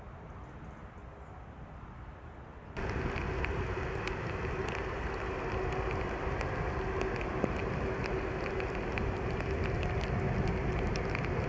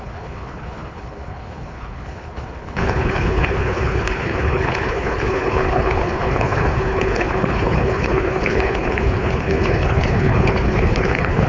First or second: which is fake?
second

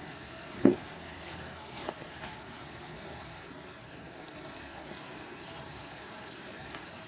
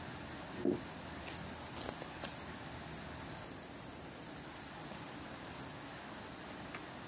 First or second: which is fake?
first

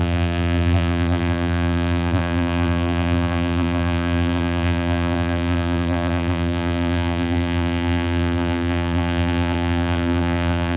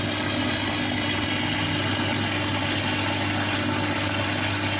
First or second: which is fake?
first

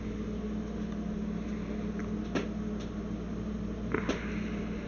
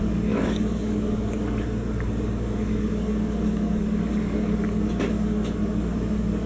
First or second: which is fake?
second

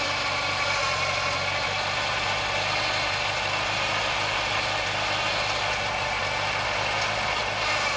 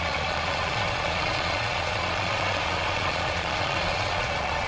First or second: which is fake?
second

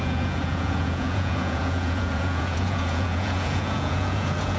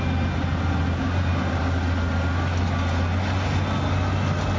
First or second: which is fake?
first